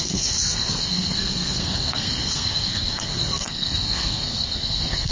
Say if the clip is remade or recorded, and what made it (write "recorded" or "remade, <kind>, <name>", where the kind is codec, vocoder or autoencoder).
remade, codec, SNAC